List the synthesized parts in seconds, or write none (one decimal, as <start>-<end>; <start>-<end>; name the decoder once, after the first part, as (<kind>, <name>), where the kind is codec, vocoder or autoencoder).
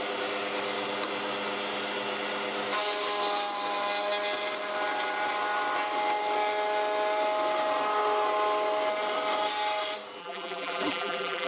10.2-11.5 (vocoder, BigVGAN v2)